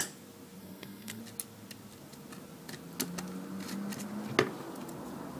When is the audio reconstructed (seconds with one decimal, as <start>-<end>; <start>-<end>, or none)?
0.6-1.2